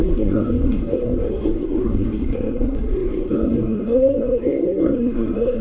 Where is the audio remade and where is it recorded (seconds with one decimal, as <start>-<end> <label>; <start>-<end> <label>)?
0.0-5.6 remade